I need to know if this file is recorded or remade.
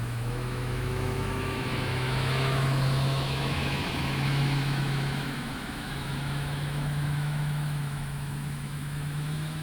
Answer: remade